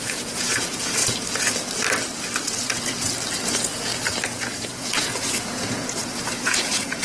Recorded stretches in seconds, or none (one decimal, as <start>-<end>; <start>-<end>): 1.0-3.5; 3.9-4.5